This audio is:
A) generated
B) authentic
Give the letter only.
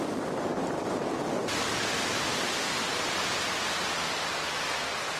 B